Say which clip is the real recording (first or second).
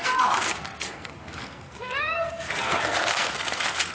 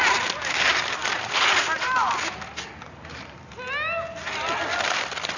second